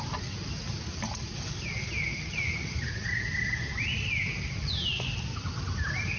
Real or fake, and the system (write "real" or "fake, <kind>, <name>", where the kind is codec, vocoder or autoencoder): real